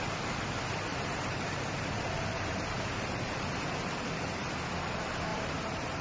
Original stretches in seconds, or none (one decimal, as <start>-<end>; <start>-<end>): 0.0-0.9; 4.5-5.3